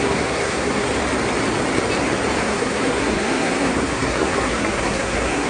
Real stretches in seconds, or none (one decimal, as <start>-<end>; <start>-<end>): 0.9-2.4